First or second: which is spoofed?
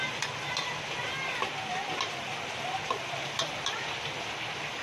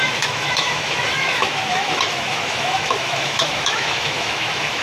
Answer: second